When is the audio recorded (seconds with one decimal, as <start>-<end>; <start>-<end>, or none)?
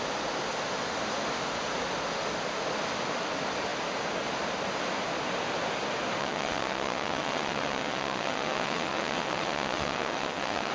0.0-6.2